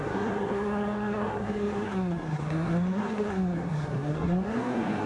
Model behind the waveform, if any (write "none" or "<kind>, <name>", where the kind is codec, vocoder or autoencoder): codec, SNAC